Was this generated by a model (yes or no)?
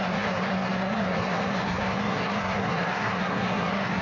yes